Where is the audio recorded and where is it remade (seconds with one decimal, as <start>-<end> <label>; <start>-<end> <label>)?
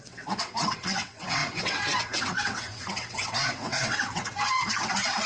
0.0-5.3 remade